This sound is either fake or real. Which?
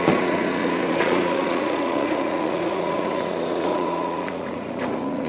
fake